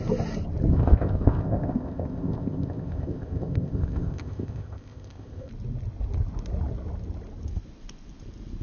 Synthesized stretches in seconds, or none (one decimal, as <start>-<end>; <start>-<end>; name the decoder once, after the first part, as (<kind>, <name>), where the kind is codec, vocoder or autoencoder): 0.7-5.5 (codec, ZipCodec)